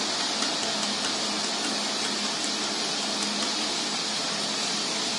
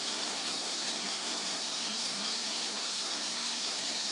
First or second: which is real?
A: first